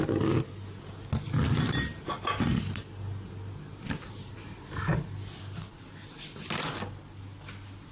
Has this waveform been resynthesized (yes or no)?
no